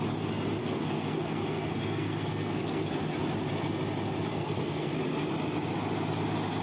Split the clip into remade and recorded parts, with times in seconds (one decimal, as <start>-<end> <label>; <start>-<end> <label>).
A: 0.0-0.6 recorded; 0.6-2.9 remade; 2.9-4.3 recorded; 4.3-4.9 remade; 4.9-6.6 recorded